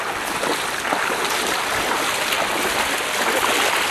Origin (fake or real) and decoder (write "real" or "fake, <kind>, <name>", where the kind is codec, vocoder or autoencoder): real